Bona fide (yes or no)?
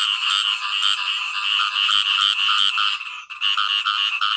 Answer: yes